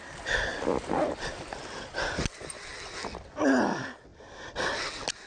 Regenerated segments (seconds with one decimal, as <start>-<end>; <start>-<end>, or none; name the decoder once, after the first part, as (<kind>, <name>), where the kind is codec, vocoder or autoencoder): none